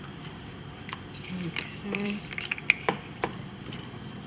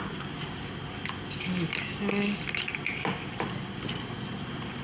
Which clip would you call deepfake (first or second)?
first